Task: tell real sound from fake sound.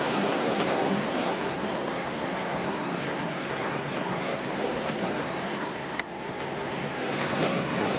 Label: fake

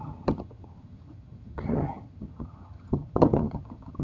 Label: fake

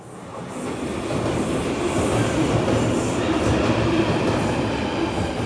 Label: real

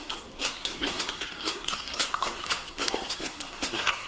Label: fake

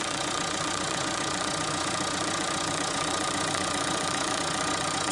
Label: fake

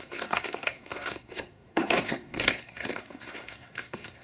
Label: fake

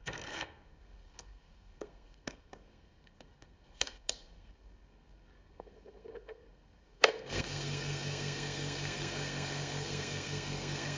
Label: fake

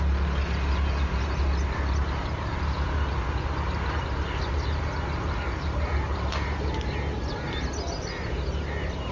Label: real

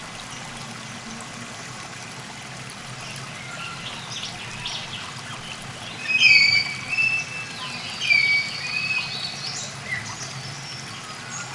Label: real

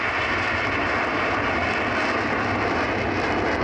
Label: real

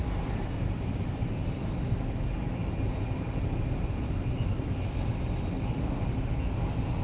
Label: real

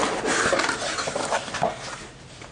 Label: real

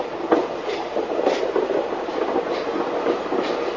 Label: real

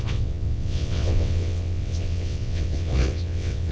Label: fake